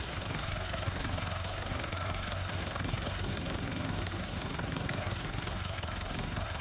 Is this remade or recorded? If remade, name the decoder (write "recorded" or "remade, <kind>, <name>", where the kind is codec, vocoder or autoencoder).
remade, codec, SNAC